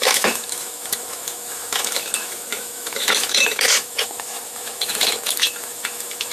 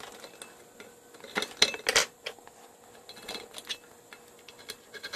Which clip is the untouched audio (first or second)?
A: second